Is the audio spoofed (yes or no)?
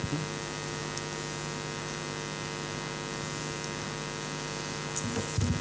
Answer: no